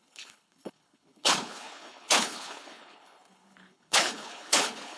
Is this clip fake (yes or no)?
yes